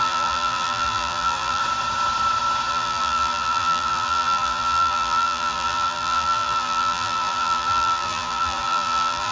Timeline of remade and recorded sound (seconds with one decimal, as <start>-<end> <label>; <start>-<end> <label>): 0.0-1.6 remade; 1.6-2.7 recorded; 2.7-9.3 remade